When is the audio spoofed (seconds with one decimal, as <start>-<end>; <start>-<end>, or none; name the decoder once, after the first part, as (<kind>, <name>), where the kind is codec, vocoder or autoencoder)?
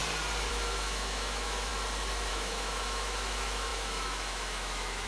0.5-1.7 (autoencoder, DAC-VAE); 2.3-5.1